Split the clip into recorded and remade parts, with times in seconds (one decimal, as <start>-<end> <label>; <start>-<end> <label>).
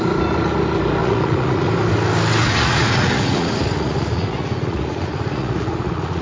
0.0-1.0 recorded; 1.0-1.7 remade; 1.7-2.4 recorded; 2.4-6.2 remade